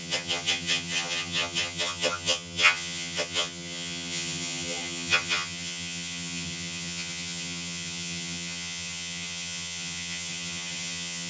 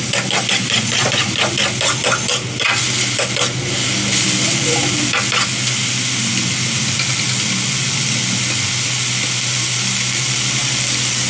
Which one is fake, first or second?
first